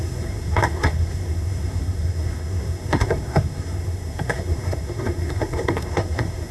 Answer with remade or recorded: remade